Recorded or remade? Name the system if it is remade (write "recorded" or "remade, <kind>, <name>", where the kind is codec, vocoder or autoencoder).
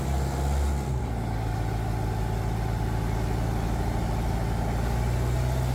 recorded